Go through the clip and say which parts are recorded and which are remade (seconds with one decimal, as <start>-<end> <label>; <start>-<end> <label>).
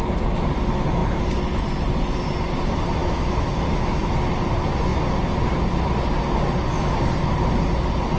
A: 0.0-3.0 recorded; 3.0-4.1 remade; 4.1-8.2 recorded